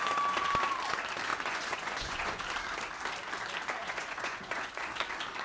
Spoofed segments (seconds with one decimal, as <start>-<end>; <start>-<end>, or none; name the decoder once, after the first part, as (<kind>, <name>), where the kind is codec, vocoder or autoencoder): 1.3-2.4 (vocoder, Vocos); 3.8-4.9